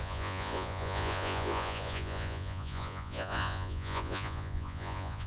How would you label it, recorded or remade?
remade